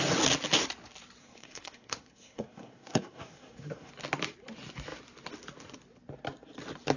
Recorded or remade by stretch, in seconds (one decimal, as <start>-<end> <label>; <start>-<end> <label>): 0.0-1.2 recorded; 1.2-3.9 remade; 3.9-7.0 recorded